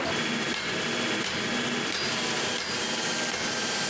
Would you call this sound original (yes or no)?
yes